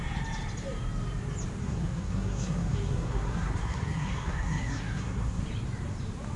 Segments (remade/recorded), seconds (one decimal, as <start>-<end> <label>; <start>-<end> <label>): 0.0-1.6 recorded; 1.6-5.4 remade; 5.4-6.4 recorded